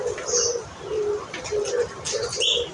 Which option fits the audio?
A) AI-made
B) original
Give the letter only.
B